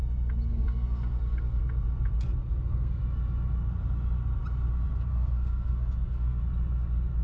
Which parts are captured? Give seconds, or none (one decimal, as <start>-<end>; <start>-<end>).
0.0-0.5; 1.6-2.4; 3.0-5.1; 6.4-7.2